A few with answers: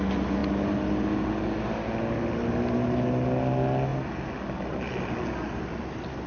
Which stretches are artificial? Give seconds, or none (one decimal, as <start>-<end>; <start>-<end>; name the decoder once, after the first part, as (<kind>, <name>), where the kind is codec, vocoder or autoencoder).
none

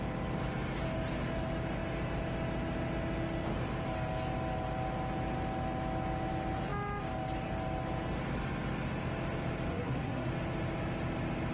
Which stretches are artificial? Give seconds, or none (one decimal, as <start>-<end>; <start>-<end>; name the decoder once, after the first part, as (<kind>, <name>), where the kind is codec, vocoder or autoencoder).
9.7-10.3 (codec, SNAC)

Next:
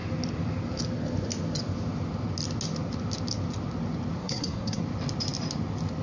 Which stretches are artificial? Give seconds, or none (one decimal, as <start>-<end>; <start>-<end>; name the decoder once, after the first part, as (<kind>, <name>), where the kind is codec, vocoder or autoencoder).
4.2-4.8 (codec, SNAC)

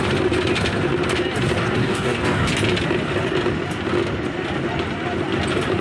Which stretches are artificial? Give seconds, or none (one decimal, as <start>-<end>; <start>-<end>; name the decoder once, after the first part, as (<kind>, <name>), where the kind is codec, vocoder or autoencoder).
1.8-2.5 (codec, DAC)